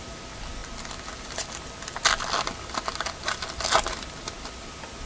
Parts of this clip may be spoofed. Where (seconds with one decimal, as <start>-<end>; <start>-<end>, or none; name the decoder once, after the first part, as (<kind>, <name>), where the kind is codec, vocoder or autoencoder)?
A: none